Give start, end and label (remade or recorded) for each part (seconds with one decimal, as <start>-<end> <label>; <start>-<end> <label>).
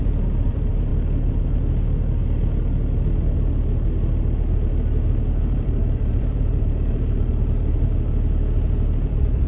0.0-0.9 remade; 0.9-4.5 recorded; 4.5-9.5 remade